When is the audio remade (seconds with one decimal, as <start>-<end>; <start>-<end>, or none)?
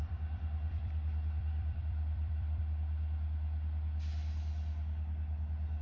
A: 0.0-2.6